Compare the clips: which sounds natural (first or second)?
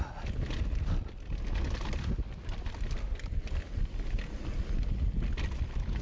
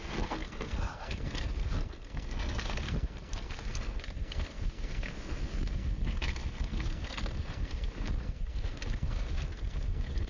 first